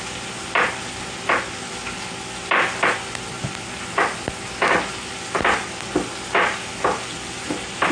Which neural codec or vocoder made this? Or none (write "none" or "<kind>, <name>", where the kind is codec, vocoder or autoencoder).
none